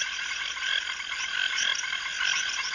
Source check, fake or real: real